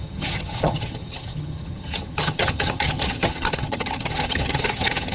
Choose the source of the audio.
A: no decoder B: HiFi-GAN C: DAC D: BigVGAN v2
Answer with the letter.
B